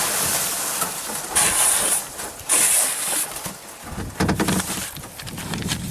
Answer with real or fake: real